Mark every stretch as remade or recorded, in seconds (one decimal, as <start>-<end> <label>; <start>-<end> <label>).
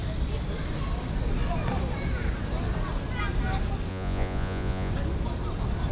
0.0-3.9 recorded; 3.9-4.9 remade; 4.9-5.9 recorded